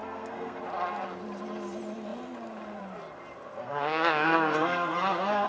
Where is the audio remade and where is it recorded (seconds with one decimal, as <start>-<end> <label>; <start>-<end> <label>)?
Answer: 0.0-0.6 remade; 0.6-3.6 recorded; 3.6-5.5 remade